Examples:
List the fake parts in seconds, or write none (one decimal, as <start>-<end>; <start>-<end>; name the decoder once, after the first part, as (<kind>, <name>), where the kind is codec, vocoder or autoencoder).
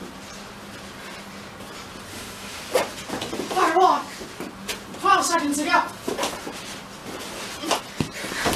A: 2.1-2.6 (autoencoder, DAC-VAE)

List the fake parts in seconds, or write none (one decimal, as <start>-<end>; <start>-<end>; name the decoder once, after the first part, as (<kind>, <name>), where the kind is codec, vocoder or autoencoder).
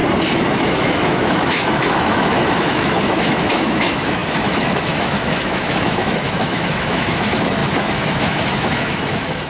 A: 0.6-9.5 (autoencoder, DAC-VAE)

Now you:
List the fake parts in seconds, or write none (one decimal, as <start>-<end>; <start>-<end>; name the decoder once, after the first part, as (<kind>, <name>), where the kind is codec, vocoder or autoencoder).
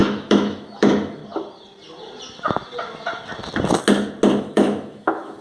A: 0.0-1.2 (autoencoder, DAC-VAE); 4.4-5.4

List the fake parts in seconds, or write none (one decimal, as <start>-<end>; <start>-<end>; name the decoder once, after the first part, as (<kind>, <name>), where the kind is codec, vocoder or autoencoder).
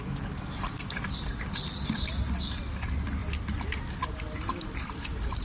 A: none